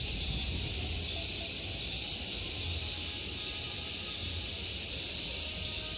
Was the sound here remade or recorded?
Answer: recorded